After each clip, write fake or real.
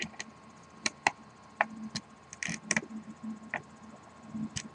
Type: real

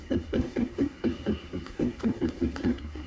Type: fake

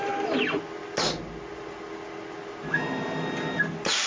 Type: real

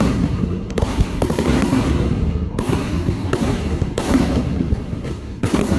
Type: fake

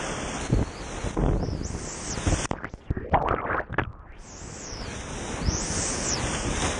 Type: real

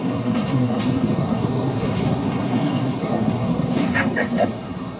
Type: fake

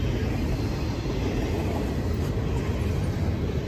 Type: real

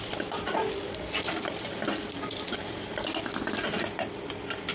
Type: real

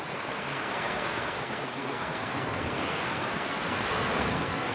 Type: fake